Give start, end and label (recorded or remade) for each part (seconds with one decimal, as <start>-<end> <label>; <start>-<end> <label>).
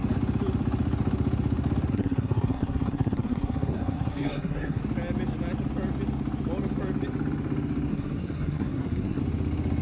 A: 0.0-1.9 recorded; 1.9-4.8 remade; 4.8-7.9 recorded; 7.9-9.2 remade; 9.2-9.8 recorded